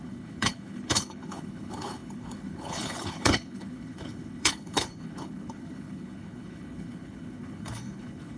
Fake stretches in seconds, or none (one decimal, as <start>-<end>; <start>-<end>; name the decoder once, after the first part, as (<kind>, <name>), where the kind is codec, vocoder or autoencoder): 0.0-8.4 (codec, HILCodec)